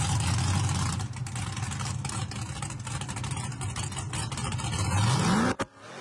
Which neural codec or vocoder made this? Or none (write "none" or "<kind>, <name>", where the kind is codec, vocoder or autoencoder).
none